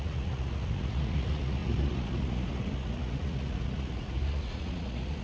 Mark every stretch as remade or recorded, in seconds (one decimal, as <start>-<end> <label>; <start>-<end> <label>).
0.0-5.2 remade